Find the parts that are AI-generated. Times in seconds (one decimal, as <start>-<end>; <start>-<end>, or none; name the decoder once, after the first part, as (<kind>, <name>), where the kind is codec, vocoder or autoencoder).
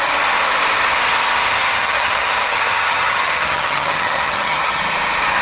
1.6-4.8 (vocoder, HiFi-GAN)